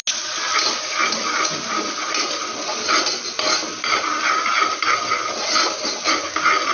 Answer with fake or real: real